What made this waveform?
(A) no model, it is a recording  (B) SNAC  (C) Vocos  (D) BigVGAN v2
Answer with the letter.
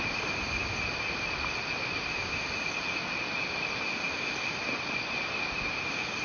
A